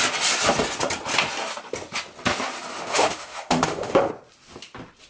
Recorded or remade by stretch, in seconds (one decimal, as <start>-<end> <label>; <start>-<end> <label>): 0.0-2.7 recorded; 2.7-4.1 remade; 4.1-5.1 recorded

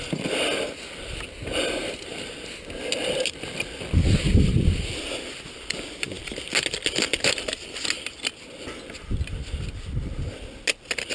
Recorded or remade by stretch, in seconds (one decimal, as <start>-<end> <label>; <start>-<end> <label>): 0.0-11.1 recorded

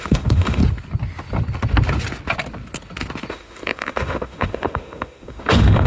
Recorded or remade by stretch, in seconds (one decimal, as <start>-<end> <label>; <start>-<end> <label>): 0.0-0.6 remade; 0.6-3.3 recorded; 3.3-5.9 remade

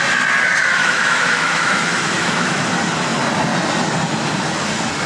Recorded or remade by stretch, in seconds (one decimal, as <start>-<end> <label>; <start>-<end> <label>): 0.0-0.8 recorded; 0.8-2.7 remade; 2.7-5.1 recorded

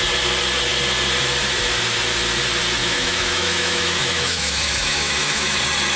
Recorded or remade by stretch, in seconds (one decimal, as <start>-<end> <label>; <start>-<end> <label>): 0.0-2.8 recorded; 2.8-5.6 remade; 5.6-6.0 recorded

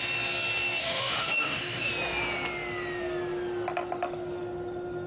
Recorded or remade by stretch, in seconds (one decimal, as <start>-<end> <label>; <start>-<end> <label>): 0.0-0.8 recorded; 0.8-1.9 remade; 1.9-5.1 recorded

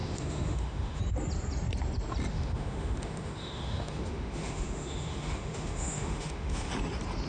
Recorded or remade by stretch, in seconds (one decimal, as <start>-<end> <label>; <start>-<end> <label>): 0.0-1.0 remade; 1.0-2.3 recorded; 2.3-6.7 remade; 6.7-7.3 recorded